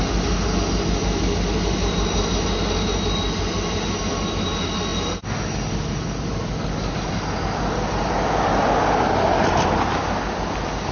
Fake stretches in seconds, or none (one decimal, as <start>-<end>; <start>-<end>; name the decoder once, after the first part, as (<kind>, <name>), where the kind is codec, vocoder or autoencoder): none